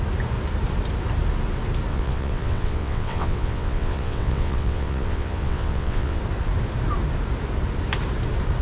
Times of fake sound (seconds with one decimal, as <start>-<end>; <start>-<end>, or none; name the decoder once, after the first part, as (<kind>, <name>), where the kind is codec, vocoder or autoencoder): 1.9-6.2 (vocoder, WaveNeXt)